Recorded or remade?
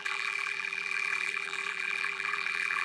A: remade